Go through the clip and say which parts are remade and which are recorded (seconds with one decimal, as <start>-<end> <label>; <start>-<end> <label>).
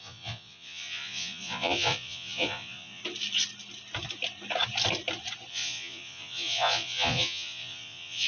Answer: 0.0-3.0 remade; 3.0-5.5 recorded; 5.5-8.3 remade